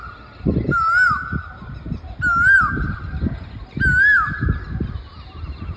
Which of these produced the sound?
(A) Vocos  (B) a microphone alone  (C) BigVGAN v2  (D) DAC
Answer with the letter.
B